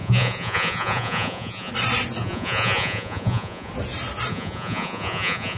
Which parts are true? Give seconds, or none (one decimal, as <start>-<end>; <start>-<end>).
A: 1.7-2.2; 3.7-4.3